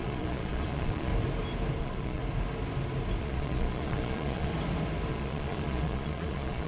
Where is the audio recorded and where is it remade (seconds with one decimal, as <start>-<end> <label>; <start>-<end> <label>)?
0.0-1.1 remade; 1.1-1.8 recorded; 1.8-2.2 remade; 2.2-3.2 recorded; 3.2-4.5 remade; 4.5-5.1 recorded; 5.1-6.7 remade